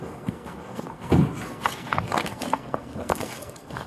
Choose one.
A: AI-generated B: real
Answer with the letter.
A